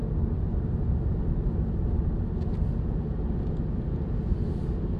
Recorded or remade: recorded